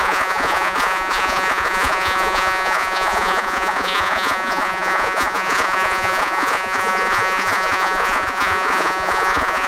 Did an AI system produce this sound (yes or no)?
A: yes